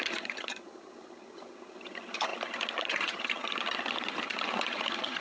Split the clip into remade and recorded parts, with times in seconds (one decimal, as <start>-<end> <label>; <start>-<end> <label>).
0.0-5.2 remade